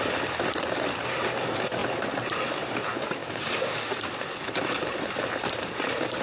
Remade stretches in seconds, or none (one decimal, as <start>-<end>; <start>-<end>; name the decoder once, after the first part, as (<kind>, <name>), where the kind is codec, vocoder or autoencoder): 3.2-4.0 (codec, DAC)